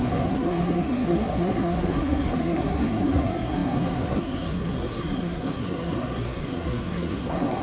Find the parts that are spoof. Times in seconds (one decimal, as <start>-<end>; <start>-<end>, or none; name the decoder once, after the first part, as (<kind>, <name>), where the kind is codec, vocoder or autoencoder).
0.0-7.6 (codec, SNAC)